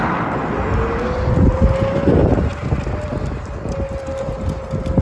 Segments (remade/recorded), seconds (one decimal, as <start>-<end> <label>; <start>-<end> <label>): 0.0-5.0 recorded